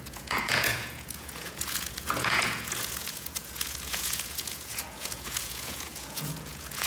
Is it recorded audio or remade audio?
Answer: remade